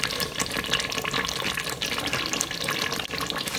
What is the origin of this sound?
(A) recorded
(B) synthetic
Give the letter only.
A